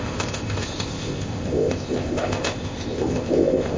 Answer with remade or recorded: remade